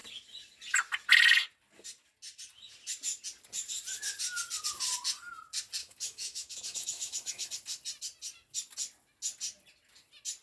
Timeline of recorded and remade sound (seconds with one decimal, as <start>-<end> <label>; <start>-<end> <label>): 0.0-5.8 recorded; 5.8-7.5 remade; 7.5-10.4 recorded

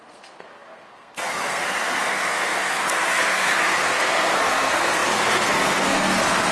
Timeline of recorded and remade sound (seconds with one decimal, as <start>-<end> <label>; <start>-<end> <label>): 0.0-6.5 remade

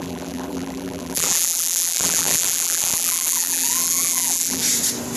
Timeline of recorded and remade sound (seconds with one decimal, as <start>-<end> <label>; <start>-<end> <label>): 0.0-4.6 remade; 4.6-5.2 recorded